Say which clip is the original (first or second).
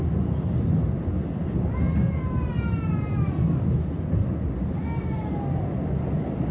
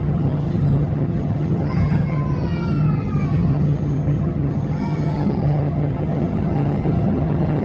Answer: first